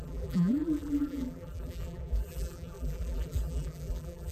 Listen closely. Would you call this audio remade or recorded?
remade